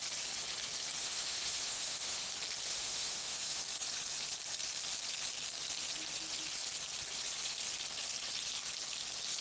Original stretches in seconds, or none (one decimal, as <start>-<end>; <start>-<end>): 0.0-1.0; 2.3-2.7; 3.6-9.4